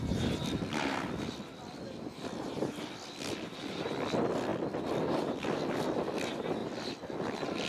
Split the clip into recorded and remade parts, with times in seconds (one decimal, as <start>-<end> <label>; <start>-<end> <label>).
0.0-7.7 recorded